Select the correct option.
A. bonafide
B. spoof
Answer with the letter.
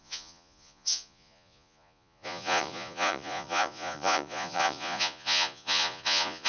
B